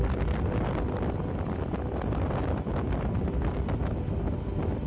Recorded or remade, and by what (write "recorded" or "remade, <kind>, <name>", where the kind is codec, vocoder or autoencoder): recorded